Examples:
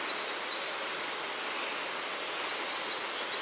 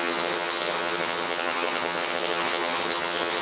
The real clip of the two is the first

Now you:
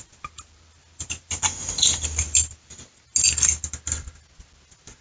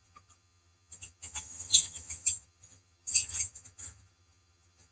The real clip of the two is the first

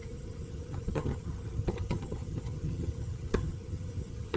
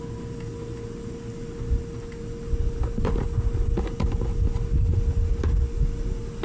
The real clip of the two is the second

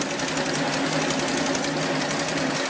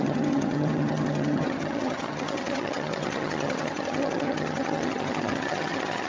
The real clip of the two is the first